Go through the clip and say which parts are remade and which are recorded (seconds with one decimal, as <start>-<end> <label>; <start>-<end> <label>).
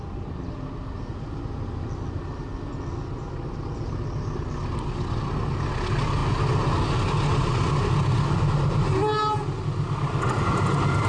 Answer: 0.0-11.1 recorded